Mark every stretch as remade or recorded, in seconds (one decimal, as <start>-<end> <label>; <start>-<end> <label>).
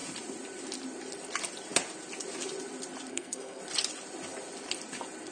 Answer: 0.0-3.1 recorded; 3.1-3.6 remade; 3.6-5.3 recorded